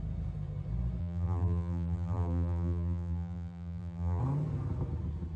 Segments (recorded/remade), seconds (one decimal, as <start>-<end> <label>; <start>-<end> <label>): 0.0-1.0 recorded; 1.0-4.2 remade; 4.2-5.4 recorded

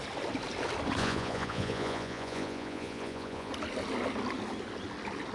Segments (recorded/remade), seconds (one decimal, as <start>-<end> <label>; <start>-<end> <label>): 0.0-1.0 recorded; 1.0-3.5 remade; 3.5-5.3 recorded

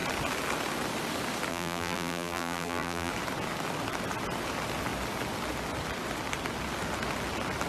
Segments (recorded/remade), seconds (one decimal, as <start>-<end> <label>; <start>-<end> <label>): 0.0-1.5 recorded; 1.5-3.1 remade; 3.1-7.7 recorded

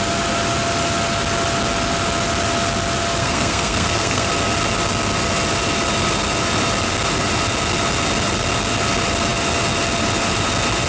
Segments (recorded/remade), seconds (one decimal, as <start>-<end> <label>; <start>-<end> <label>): 0.0-3.2 recorded; 3.2-4.3 remade; 4.3-10.9 recorded